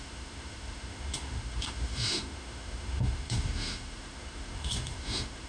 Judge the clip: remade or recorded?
remade